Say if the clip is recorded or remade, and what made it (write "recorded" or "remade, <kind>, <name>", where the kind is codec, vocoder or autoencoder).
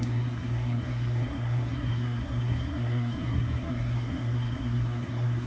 remade, codec, SNAC